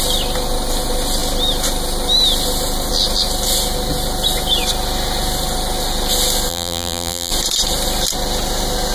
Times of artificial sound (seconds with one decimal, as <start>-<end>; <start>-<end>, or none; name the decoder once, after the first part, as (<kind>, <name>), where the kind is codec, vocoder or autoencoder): 6.5-7.3 (vocoder, BigVGAN v2)